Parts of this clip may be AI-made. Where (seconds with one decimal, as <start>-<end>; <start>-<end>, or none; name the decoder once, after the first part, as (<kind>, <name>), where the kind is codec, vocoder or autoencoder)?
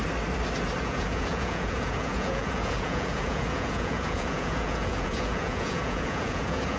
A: 0.8-6.8 (vocoder, Vocos)